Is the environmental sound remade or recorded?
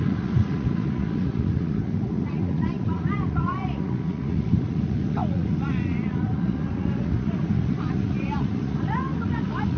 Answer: remade